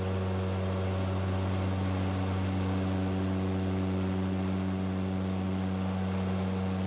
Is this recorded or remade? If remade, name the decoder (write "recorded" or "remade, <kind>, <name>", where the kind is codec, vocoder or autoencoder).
recorded